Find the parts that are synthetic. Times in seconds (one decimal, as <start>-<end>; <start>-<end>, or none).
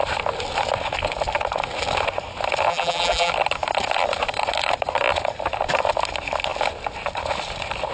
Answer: 2.7-3.3